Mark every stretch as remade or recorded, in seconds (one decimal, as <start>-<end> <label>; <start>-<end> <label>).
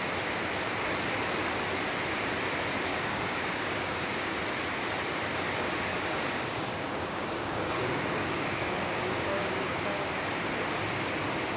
0.0-2.9 recorded; 2.9-4.4 remade; 4.4-5.9 recorded; 5.9-10.2 remade; 10.2-11.6 recorded